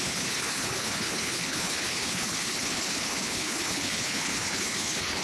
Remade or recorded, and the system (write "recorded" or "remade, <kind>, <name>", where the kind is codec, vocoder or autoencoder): remade, codec, HILCodec